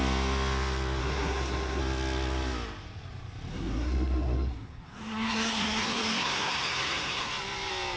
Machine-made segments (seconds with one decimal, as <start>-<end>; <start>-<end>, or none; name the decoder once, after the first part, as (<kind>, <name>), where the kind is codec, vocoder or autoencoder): 1.0-1.8 (codec, SNAC); 3.5-7.3